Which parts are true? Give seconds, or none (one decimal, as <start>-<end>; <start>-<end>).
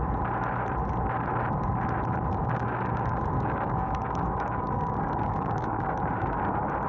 0.0-2.4; 6.5-6.9